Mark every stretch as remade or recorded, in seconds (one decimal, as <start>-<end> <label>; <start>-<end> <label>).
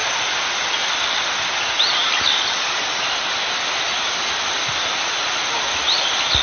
0.0-6.4 recorded